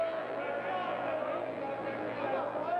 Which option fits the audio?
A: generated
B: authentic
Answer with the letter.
A